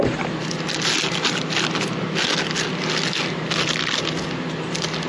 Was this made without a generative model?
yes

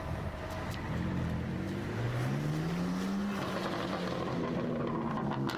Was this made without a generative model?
yes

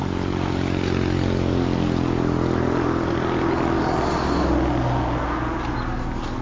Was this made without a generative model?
yes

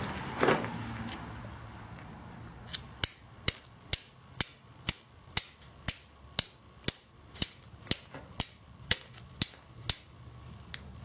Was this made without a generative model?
yes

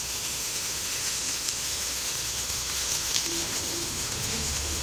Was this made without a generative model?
no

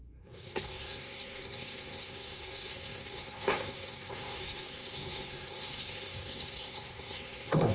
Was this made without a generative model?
no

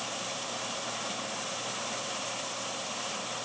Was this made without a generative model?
no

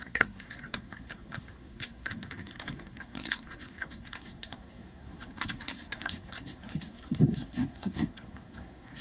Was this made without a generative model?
no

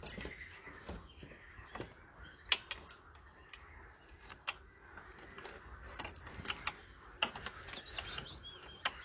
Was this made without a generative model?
yes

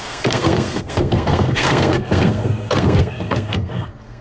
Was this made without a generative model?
no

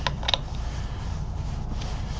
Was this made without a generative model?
yes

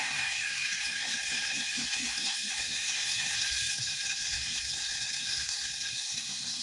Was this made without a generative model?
no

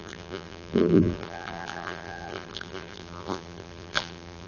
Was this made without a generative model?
no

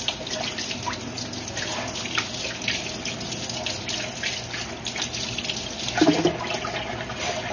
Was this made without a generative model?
yes